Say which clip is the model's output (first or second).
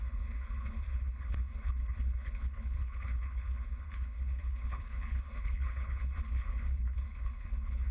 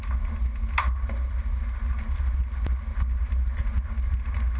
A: first